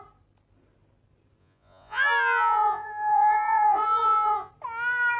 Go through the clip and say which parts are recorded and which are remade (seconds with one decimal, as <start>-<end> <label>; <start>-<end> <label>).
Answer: 0.0-1.4 recorded; 1.4-4.5 remade; 4.5-5.2 recorded